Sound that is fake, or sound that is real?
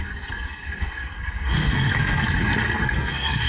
fake